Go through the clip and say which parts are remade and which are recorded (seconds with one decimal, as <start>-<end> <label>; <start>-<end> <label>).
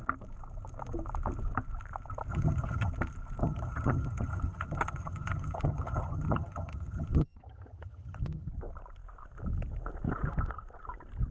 0.0-2.3 recorded; 2.3-2.9 remade; 2.9-3.4 recorded; 3.4-8.5 remade; 8.5-11.3 recorded